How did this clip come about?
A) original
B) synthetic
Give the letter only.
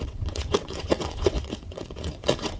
B